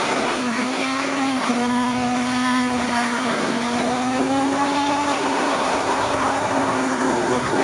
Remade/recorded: remade